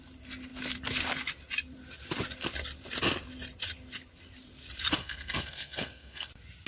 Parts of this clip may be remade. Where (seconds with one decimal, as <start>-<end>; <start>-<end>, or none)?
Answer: 5.0-6.3